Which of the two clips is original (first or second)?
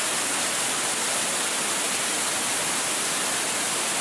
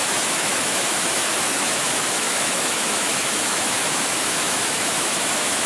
first